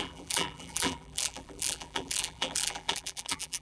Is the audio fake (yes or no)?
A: yes